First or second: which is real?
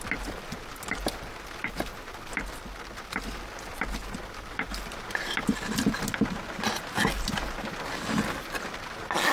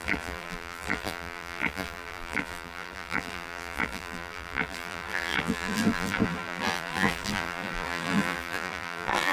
first